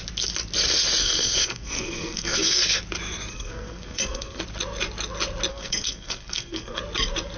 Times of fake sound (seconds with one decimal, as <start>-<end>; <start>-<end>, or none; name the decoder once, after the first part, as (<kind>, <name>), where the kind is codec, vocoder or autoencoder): 1.0-2.6 (codec, SNAC); 3.3-4.4; 5.5-6.8